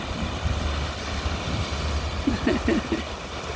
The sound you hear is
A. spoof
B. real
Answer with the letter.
B